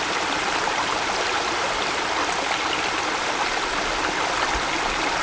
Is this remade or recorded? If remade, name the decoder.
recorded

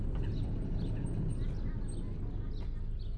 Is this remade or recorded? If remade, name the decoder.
recorded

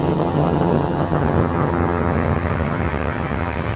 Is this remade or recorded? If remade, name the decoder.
remade, vocoder, HiFi-GAN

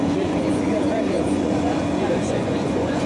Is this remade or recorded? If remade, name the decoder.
remade, vocoder, Vocos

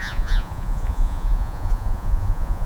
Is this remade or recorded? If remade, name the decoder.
remade, vocoder, Vocos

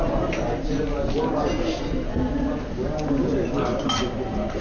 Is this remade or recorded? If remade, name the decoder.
recorded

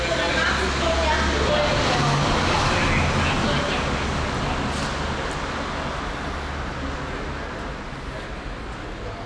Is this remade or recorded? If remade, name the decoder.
recorded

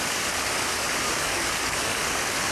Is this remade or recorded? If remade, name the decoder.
remade, codec, DAC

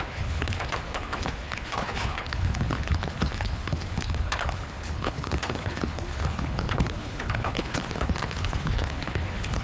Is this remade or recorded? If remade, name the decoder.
remade, codec, HILCodec